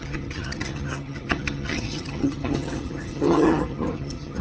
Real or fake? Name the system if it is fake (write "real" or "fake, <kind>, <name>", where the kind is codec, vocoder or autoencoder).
fake, vocoder, HiFi-GAN